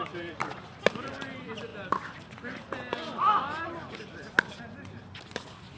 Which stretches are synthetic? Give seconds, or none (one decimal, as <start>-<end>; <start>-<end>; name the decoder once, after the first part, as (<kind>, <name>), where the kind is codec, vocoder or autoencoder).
none